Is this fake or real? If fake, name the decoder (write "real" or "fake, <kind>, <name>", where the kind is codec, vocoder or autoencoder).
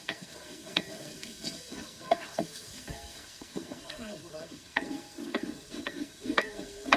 fake, codec, SNAC